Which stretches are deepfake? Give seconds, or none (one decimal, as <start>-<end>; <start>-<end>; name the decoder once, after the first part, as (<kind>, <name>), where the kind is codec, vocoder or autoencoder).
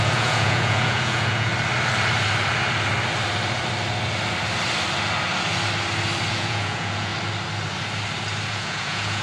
0.0-1.5 (vocoder, Vocos); 6.3-7.1; 8.5-9.2